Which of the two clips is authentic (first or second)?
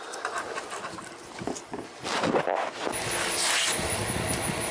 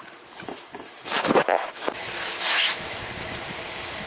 first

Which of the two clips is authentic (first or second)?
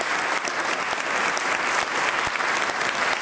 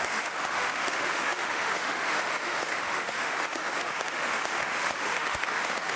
first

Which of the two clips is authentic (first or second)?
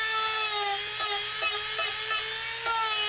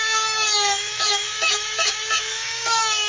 first